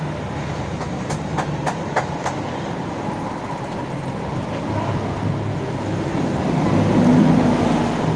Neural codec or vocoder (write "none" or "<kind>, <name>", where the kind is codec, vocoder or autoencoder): none